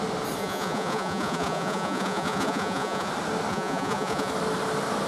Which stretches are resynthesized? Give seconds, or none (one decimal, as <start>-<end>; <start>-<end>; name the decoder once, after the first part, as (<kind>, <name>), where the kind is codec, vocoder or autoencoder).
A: 0.4-3.1 (vocoder, Vocos); 3.5-4.3